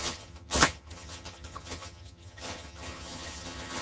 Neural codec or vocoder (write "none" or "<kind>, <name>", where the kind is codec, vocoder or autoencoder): vocoder, HiFi-GAN